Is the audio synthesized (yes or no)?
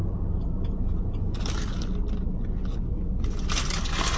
no